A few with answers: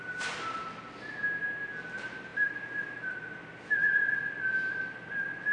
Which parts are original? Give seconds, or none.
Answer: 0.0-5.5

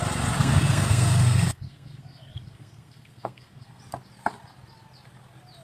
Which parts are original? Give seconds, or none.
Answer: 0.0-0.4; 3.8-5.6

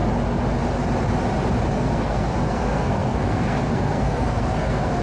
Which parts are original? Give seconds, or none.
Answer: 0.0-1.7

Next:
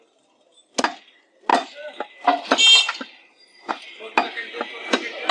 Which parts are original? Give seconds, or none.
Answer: 0.0-5.3

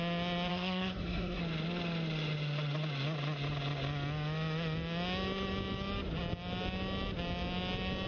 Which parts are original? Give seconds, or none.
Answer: 0.0-0.5; 1.4-8.1

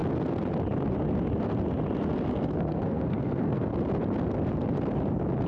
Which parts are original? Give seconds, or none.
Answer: 0.0-2.3; 3.7-5.5

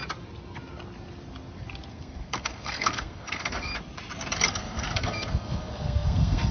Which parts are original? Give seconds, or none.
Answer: 0.0-1.9; 3.7-4.5

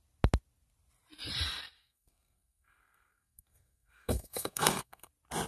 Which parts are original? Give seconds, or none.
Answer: 0.0-1.8; 5.1-5.5